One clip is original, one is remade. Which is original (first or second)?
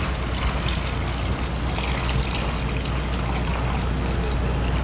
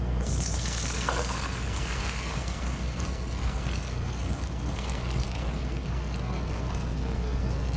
first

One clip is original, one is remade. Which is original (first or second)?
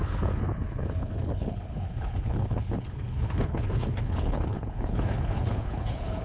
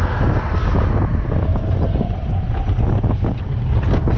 second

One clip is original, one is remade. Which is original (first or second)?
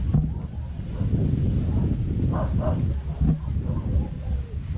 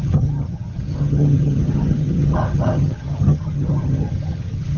first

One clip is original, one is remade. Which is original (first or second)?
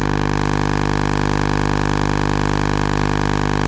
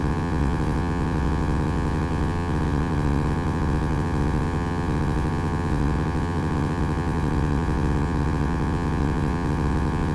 first